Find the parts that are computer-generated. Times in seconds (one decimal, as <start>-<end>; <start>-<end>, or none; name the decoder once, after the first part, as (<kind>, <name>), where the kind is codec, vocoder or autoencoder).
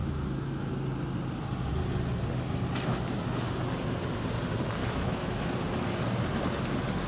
0.0-0.7 (autoencoder, DAC-VAE); 4.8-5.6